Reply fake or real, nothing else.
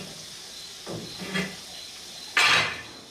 real